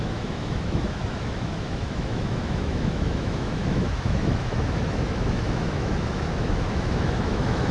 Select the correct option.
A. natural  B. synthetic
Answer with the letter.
B